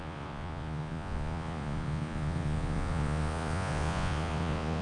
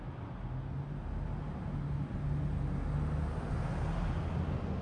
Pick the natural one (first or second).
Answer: second